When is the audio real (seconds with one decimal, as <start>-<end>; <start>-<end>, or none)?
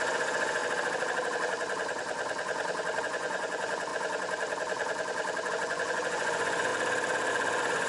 0.6-3.0; 3.9-5.5; 6.7-7.3